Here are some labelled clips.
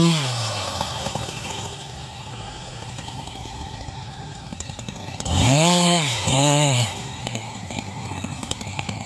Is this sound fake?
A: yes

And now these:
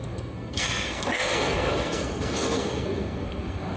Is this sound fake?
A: yes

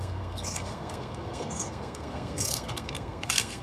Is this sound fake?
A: yes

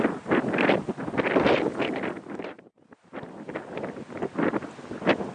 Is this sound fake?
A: no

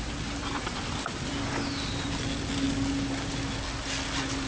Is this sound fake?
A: no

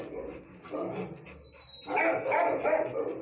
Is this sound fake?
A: no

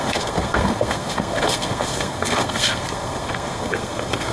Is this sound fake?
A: yes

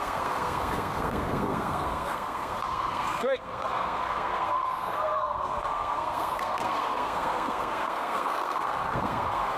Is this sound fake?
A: yes